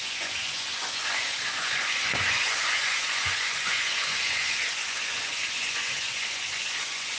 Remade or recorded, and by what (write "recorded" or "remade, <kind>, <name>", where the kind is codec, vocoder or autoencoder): remade, vocoder, Vocos